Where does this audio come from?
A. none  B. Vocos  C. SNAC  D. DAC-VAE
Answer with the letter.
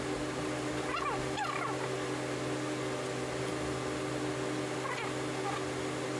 A